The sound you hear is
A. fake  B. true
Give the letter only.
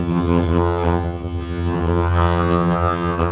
A